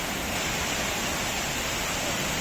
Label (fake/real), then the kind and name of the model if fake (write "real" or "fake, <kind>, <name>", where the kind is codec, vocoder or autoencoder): real